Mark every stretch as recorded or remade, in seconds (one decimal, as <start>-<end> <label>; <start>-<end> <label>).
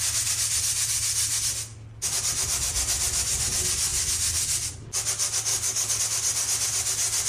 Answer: 0.0-5.5 recorded; 5.5-6.0 remade; 6.0-7.3 recorded